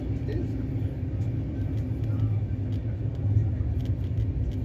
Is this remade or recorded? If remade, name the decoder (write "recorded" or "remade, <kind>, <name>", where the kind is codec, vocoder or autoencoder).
recorded